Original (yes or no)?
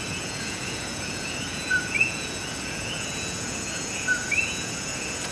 no